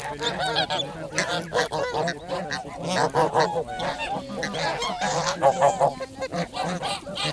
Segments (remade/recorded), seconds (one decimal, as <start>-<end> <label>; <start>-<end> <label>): 0.0-6.3 recorded; 6.3-6.8 remade; 6.8-7.3 recorded